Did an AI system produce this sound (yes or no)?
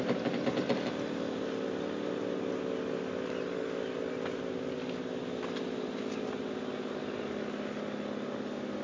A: no